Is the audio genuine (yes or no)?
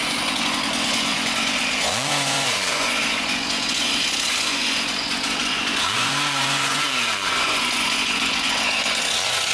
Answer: no